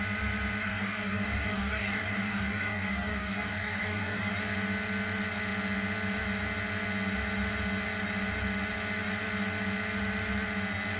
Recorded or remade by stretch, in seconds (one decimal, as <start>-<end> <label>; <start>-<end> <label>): 0.0-0.6 recorded; 0.6-4.3 remade; 4.3-11.0 recorded